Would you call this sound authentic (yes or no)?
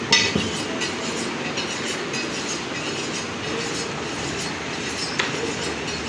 yes